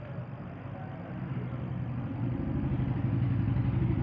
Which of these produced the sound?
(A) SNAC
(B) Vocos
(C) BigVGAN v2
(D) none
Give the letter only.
D